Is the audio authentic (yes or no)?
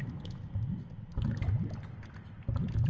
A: yes